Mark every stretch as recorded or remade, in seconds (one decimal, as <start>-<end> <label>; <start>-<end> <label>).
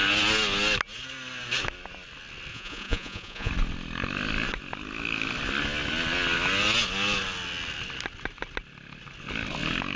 0.0-2.5 recorded; 2.5-3.5 remade; 3.5-10.0 recorded